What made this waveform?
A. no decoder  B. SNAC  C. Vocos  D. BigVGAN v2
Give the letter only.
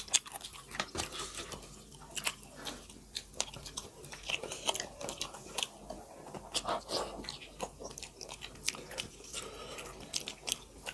A